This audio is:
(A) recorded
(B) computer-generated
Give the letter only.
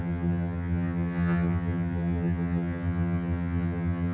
B